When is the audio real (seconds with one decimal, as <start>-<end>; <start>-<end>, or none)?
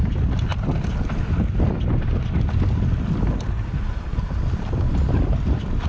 0.0-5.9